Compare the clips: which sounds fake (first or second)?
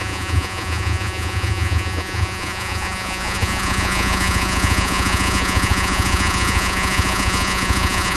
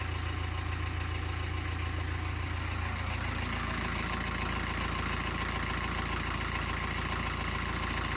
first